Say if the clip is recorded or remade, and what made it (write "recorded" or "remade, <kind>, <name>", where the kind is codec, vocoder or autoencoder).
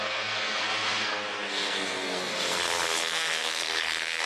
remade, codec, SNAC